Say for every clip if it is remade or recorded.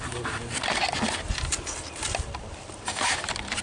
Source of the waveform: recorded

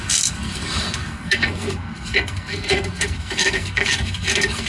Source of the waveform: remade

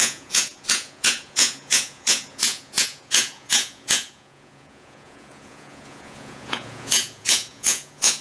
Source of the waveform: remade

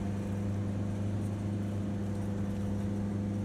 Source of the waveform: recorded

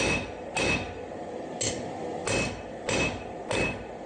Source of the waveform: recorded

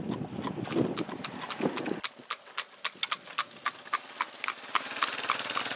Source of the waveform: recorded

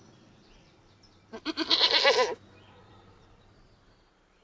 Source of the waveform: remade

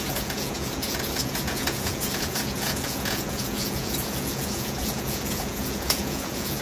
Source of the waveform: remade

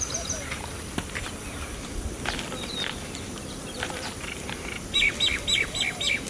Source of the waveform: remade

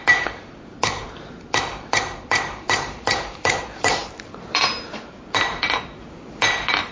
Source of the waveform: remade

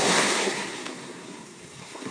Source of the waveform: remade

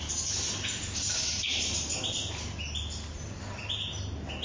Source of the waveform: recorded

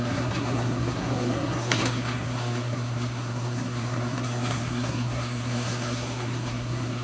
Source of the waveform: remade